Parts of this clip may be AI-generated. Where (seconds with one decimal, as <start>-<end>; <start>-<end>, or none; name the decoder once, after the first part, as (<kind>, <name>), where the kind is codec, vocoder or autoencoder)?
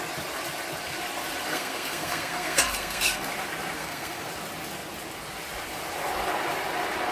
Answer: 1.5-3.3 (codec, SNAC); 3.8-4.3